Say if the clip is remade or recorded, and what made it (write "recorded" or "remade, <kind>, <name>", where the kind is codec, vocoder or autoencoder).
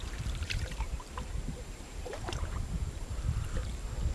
remade, vocoder, BigVGAN v2